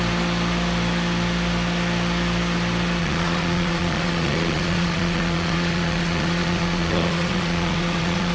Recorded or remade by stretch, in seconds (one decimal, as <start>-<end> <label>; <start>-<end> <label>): 0.0-3.0 recorded; 3.0-8.3 remade